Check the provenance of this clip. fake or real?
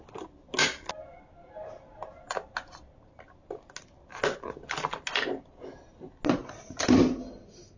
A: real